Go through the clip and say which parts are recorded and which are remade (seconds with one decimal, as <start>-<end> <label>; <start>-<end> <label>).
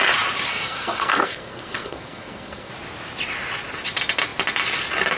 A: 0.0-0.5 recorded; 0.5-2.7 remade; 2.7-5.2 recorded